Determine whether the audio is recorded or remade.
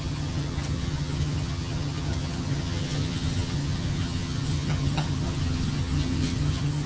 remade